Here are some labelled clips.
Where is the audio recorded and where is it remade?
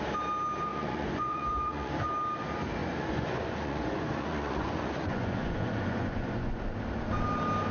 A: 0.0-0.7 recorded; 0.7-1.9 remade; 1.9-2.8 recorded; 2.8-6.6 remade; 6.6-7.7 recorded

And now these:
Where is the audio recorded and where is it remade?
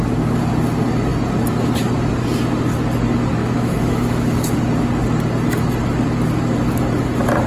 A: 0.0-3.4 recorded; 3.4-4.6 remade; 4.6-7.5 recorded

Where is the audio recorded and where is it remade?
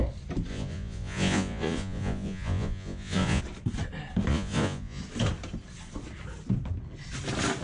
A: 0.0-0.5 recorded; 0.5-3.4 remade; 3.4-4.3 recorded; 4.3-5.0 remade; 5.0-7.6 recorded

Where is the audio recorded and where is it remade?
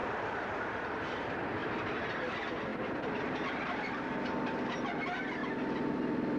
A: 0.0-5.4 remade; 5.4-6.4 recorded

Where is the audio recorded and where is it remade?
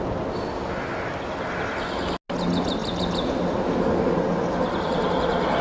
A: 0.0-5.6 recorded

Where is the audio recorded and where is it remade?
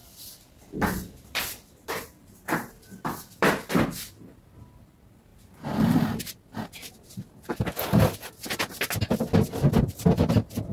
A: 0.0-4.4 remade; 4.4-5.3 recorded; 5.3-6.2 remade; 6.2-10.7 recorded